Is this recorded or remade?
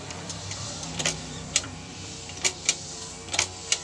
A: remade